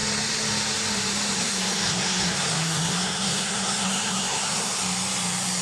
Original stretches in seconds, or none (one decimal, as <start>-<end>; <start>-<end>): 0.0-1.4; 4.8-5.6